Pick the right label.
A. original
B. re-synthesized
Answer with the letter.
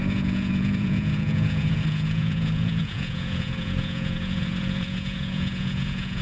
B